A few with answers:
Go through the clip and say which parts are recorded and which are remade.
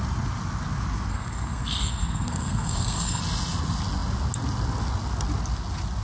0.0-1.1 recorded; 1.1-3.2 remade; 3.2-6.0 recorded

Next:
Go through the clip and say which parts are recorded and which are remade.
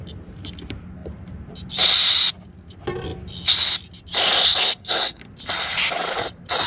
0.0-4.6 recorded; 4.6-5.2 remade; 5.2-6.7 recorded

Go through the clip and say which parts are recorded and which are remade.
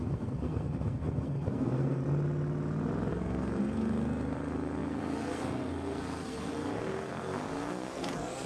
0.0-2.0 remade; 2.0-3.1 recorded; 3.1-8.5 remade